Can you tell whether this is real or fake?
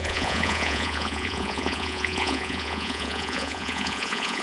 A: fake